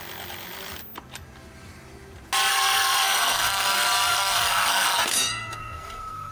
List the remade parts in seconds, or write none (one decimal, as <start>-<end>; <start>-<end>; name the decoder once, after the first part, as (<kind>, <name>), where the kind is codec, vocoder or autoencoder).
2.5-6.3 (codec, SNAC)